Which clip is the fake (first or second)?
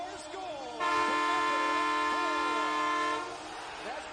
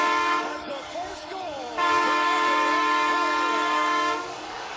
second